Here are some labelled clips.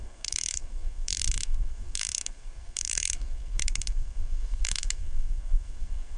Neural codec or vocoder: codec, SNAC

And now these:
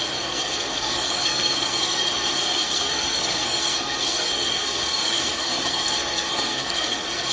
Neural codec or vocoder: codec, SNAC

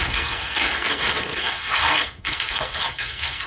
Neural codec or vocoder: codec, SNAC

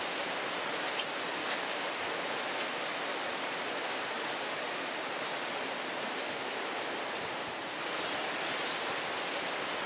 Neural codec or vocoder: none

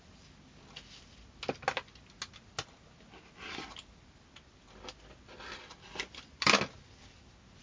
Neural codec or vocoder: none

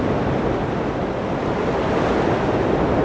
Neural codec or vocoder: none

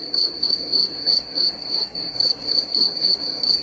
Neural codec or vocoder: codec, SNAC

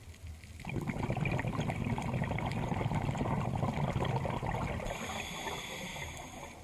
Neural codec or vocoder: none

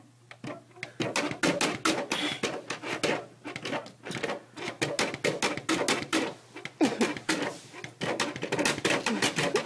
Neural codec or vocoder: none